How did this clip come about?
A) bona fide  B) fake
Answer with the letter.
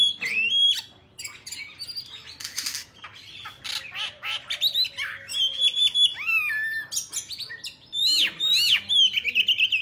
A